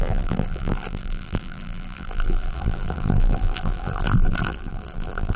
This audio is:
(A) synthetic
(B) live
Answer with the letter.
A